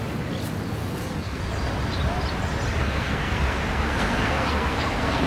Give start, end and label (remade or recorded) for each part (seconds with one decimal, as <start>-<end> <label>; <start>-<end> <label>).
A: 0.0-0.8 recorded; 0.8-1.4 remade; 1.4-2.8 recorded; 2.8-5.3 remade